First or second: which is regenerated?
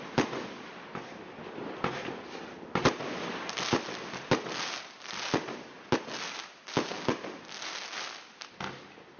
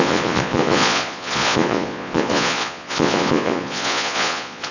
second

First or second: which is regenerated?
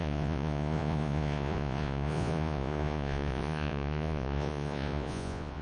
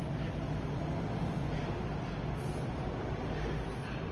first